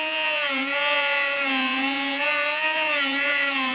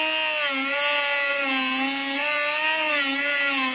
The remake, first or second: first